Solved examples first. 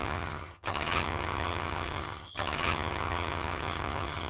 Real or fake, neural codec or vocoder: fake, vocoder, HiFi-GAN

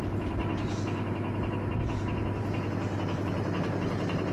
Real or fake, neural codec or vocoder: real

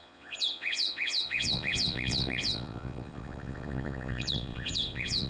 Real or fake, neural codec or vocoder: fake, vocoder, Vocos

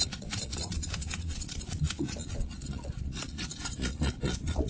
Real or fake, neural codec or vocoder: fake, vocoder, Vocos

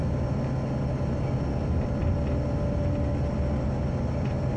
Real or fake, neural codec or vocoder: real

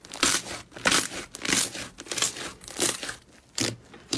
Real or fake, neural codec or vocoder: real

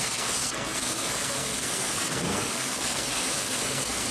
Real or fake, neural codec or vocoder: fake, codec, SNAC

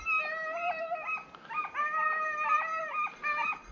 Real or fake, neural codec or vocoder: real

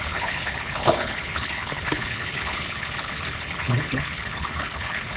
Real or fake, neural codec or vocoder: fake, codec, HILCodec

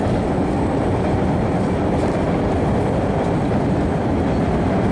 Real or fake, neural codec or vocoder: real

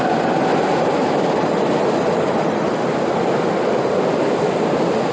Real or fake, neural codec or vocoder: real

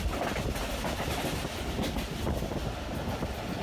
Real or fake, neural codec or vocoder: real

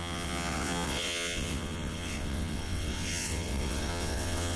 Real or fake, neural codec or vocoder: fake, vocoder, WaveNeXt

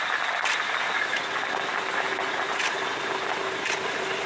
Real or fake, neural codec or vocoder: real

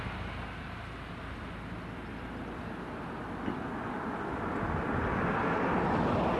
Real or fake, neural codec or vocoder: real